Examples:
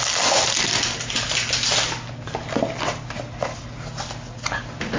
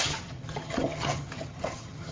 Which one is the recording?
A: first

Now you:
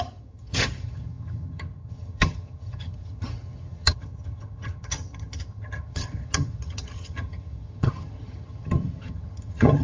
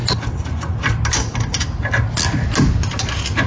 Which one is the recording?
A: second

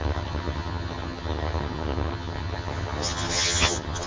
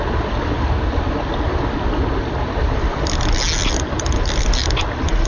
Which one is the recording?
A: second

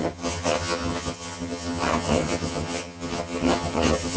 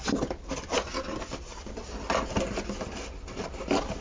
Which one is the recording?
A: second